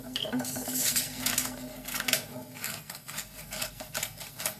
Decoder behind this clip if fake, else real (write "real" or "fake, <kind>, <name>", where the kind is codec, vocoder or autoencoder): fake, codec, SNAC